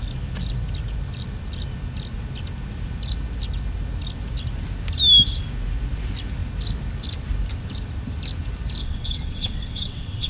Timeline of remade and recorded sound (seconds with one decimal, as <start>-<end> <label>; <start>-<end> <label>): 0.0-8.8 recorded; 8.8-10.3 remade